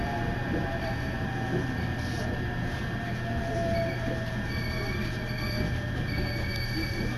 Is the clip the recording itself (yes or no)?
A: no